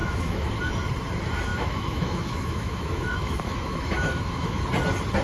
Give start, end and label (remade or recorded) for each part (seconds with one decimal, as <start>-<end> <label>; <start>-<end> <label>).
0.0-0.5 remade; 0.5-1.5 recorded; 1.5-4.6 remade; 4.6-5.2 recorded